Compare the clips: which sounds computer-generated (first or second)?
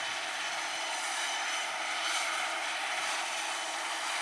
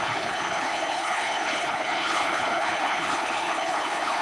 second